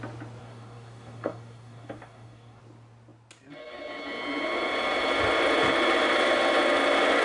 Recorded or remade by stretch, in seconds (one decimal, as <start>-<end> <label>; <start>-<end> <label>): 0.0-0.4 recorded; 0.4-2.6 remade; 2.6-7.2 recorded